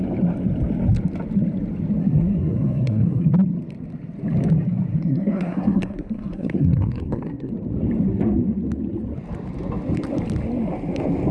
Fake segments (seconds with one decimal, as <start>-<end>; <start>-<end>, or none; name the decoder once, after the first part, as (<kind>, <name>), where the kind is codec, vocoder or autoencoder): 2.0-3.3 (codec, SNAC); 4.9-7.5